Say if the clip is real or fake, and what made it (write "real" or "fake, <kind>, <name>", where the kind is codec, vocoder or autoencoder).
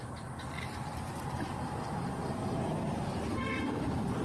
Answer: fake, vocoder, BigVGAN v2